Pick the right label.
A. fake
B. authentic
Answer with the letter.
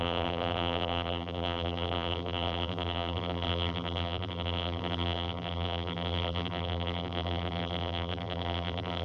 A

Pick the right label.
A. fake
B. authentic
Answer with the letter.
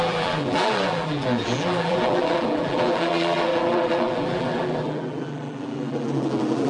A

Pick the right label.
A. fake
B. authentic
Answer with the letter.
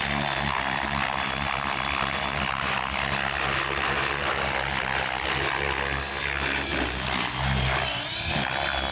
B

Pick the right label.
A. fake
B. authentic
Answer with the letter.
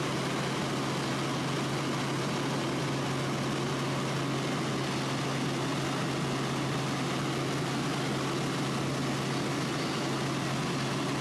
B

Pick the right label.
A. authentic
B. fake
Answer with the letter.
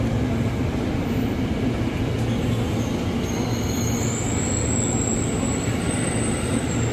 A